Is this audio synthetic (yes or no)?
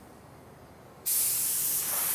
no